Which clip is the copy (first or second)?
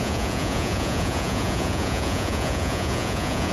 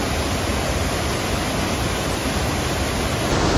first